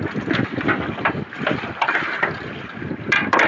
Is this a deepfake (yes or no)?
no